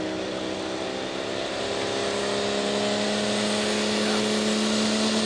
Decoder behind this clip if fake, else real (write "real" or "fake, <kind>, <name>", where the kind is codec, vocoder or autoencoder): real